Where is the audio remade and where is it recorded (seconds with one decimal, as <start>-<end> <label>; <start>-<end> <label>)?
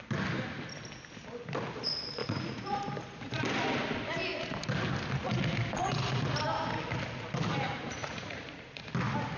0.0-2.2 recorded; 2.2-2.9 remade; 2.9-8.0 recorded; 8.0-8.9 remade; 8.9-9.4 recorded